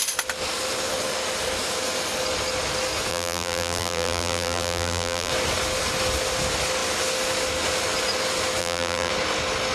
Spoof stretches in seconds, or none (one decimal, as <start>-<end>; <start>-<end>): 3.1-5.3; 8.6-9.1